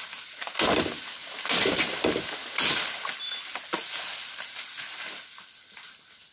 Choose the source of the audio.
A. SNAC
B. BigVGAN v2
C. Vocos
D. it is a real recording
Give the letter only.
D